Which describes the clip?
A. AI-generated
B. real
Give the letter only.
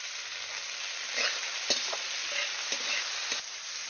B